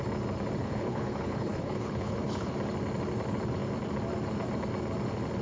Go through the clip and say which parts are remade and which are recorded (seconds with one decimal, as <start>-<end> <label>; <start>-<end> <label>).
0.0-0.6 recorded; 0.6-2.5 remade; 2.5-5.4 recorded